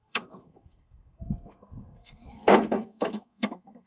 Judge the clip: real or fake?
fake